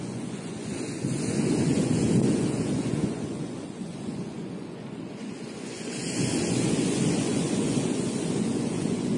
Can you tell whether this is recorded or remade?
remade